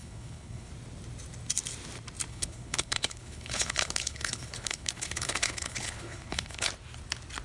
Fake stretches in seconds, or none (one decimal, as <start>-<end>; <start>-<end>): 0.0-0.7; 2.3-6.7